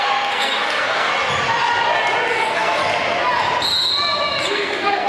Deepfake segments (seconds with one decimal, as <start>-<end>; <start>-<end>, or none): 0.0-1.1; 2.3-2.8; 4.5-5.1